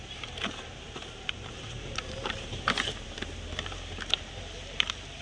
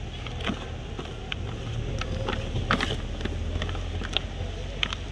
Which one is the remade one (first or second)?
first